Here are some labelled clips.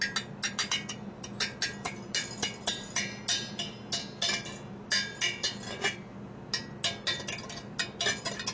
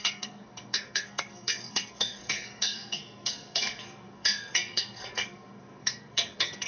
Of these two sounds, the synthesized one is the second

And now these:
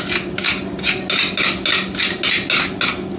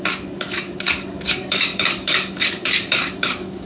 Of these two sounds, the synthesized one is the second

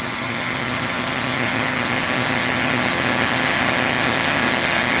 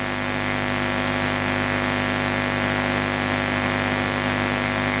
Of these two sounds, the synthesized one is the first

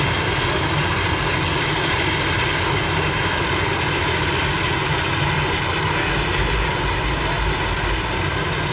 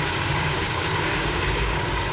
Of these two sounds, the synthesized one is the second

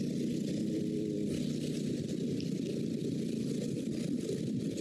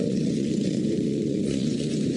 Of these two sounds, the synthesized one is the second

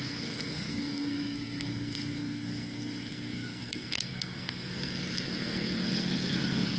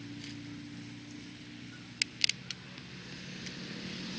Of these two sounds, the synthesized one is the first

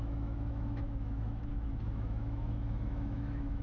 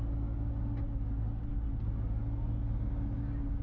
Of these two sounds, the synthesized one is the first